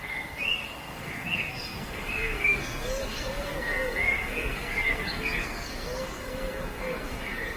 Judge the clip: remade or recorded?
remade